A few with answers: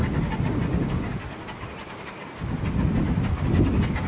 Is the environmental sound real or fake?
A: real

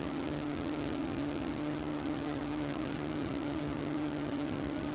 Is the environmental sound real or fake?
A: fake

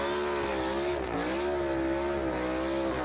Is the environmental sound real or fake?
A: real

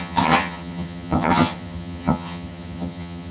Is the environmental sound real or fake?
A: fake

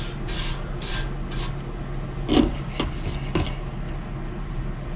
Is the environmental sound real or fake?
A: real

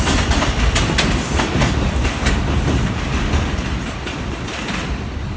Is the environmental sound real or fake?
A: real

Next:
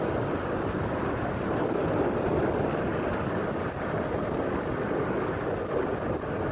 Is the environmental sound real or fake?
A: real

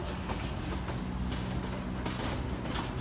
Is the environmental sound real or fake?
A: real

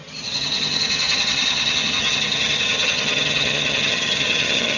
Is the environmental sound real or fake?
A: fake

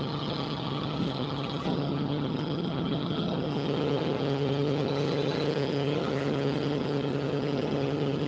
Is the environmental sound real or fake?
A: fake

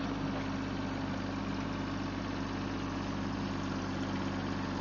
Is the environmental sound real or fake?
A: real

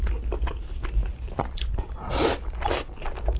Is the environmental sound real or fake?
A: real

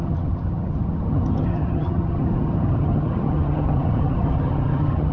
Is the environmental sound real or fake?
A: fake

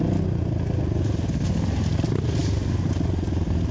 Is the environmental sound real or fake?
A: real